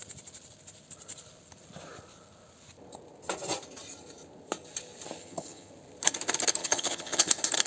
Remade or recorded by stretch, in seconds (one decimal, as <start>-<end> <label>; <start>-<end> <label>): 0.0-5.2 recorded; 5.2-5.7 remade; 5.7-6.6 recorded; 6.6-7.3 remade; 7.3-7.7 recorded